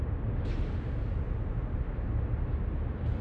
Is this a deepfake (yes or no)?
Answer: no